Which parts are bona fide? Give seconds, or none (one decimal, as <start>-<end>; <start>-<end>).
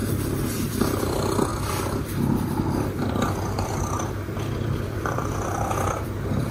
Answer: none